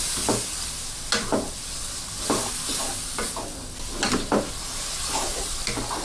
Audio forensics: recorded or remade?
recorded